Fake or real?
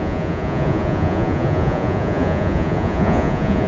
fake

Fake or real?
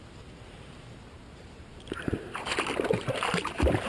fake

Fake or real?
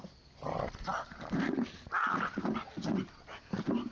real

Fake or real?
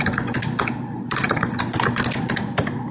real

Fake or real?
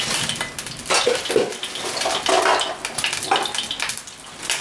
real